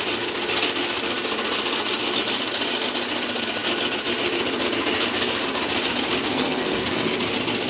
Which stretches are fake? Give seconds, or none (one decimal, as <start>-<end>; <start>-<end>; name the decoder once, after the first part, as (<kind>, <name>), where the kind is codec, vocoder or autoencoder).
6.3-7.2 (codec, SNAC)